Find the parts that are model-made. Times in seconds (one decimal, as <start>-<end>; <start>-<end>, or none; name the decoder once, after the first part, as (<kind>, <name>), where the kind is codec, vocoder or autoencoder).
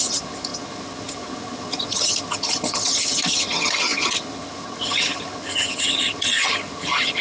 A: 0.0-7.2 (vocoder, HiFi-GAN)